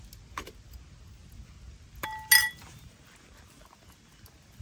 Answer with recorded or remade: recorded